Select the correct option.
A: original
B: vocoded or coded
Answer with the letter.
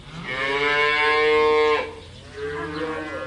A